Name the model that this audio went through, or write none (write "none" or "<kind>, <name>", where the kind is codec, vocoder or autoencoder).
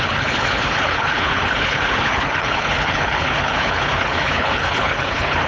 codec, HILCodec